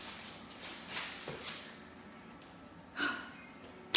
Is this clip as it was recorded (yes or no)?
yes